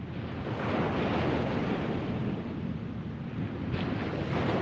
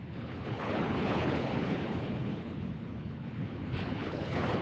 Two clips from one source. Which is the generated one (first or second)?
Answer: second